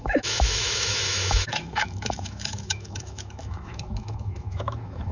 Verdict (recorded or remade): remade